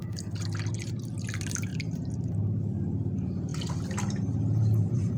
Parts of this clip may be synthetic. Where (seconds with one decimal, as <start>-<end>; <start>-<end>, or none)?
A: 0.7-5.2